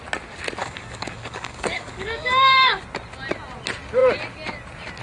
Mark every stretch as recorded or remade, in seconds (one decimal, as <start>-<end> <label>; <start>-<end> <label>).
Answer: 0.0-0.6 recorded; 0.6-2.8 remade; 2.8-5.0 recorded